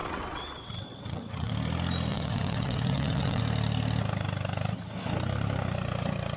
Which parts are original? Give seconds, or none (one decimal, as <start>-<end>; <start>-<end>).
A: 1.5-2.1; 3.4-6.4